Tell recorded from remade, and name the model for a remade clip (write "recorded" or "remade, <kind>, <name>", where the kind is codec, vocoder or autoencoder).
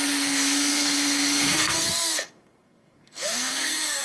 remade, codec, SNAC